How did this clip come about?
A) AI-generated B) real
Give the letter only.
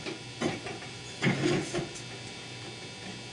B